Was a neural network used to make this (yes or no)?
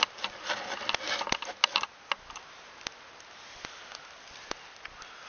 no